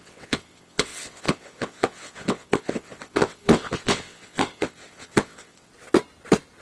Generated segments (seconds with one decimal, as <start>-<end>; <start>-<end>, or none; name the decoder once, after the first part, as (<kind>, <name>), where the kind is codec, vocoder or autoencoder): 0.0-5.7 (vocoder, WaveNeXt)